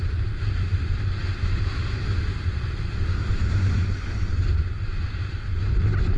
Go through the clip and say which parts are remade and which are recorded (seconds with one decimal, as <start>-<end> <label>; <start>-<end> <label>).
0.0-6.2 recorded

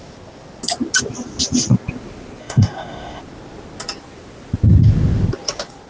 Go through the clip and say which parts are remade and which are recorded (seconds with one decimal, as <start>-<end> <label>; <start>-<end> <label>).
0.0-2.4 recorded; 2.4-3.2 remade; 3.2-5.9 recorded

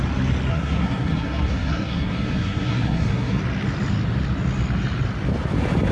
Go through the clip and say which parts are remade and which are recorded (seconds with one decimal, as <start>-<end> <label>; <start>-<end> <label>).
0.0-0.5 recorded; 0.5-3.4 remade; 3.4-5.9 recorded

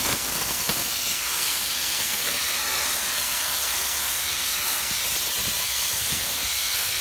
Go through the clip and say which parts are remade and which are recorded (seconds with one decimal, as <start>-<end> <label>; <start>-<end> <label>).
0.0-5.0 remade; 5.0-5.6 recorded; 5.6-7.0 remade

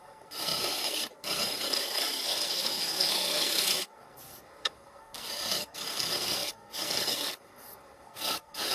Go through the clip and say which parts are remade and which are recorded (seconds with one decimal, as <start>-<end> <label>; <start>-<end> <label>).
0.0-8.7 remade

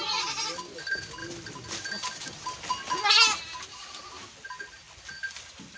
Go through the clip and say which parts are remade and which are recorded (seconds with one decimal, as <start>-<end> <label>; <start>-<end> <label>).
0.0-5.8 recorded